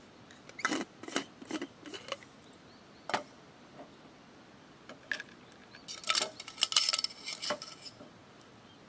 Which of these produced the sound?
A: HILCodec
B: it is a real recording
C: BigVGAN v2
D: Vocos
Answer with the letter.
B